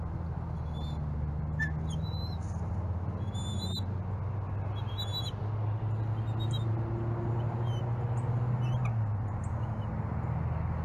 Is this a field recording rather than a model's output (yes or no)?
yes